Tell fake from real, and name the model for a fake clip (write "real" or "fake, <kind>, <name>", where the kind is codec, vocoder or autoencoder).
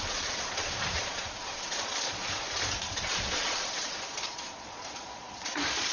fake, vocoder, Vocos